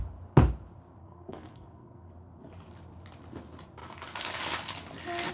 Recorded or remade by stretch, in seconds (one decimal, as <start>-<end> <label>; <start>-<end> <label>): 0.0-1.0 recorded; 1.0-2.1 remade; 2.1-5.3 recorded